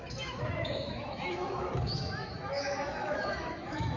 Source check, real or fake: fake